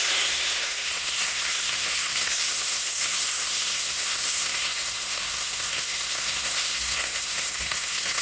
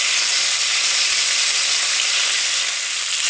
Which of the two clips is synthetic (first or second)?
first